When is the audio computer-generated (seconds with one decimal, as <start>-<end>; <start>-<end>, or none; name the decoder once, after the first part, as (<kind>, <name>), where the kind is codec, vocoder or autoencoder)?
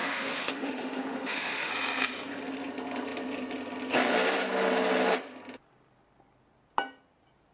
0.0-1.7 (autoencoder, DAC-VAE)